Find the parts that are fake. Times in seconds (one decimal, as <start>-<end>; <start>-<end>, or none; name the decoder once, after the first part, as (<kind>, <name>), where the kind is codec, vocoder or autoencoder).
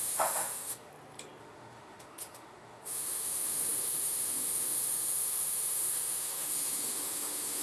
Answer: 0.0-0.9 (autoencoder, DAC-VAE); 1.4-7.6